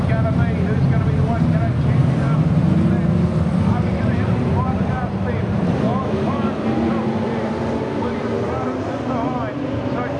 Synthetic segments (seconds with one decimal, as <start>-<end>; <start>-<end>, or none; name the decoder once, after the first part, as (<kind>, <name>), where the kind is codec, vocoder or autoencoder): 3.7-6.0 (vocoder, BigVGAN v2)